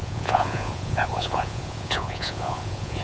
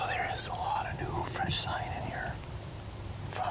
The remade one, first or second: first